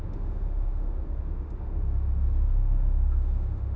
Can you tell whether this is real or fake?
fake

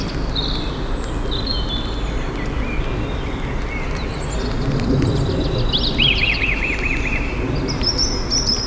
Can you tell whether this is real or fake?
real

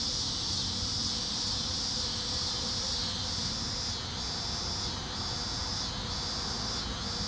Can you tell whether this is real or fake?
real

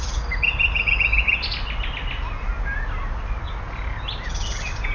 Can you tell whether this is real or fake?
real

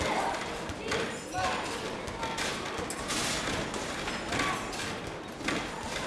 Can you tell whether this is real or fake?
real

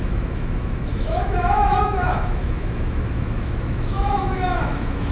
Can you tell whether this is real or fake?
fake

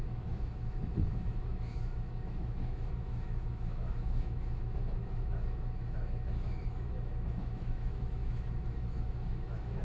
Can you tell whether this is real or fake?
fake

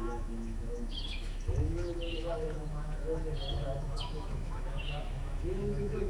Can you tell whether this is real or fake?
fake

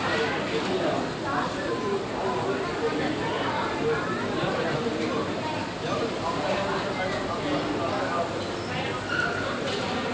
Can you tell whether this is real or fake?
real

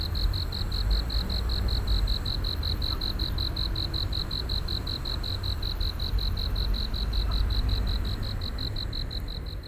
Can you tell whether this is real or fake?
real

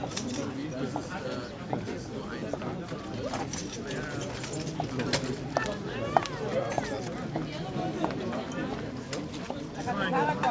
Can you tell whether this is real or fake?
real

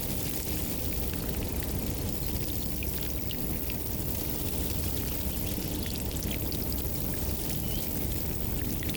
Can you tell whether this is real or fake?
real